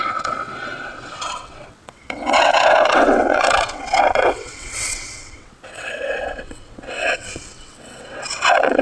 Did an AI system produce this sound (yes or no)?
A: yes